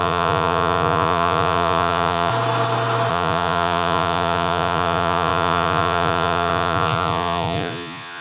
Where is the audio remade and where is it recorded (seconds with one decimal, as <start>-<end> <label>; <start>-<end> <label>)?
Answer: 0.0-2.3 remade; 2.3-3.1 recorded; 3.1-8.2 remade